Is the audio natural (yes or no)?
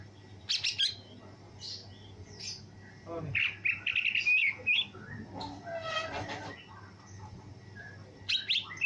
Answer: yes